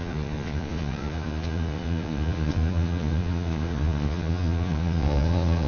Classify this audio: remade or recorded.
remade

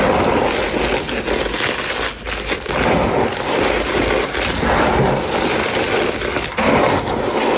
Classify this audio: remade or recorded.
recorded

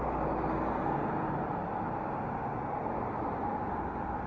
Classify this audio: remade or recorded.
recorded